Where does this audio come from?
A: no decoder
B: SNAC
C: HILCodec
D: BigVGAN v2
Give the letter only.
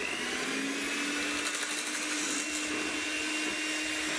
A